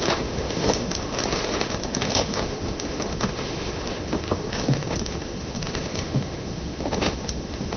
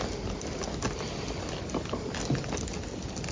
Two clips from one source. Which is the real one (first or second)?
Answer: second